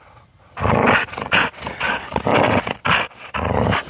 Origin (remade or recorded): recorded